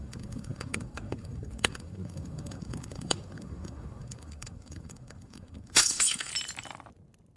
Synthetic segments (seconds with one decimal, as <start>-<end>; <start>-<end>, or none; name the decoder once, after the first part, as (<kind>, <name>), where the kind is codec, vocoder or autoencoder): 0.0-6.3 (codec, SNAC)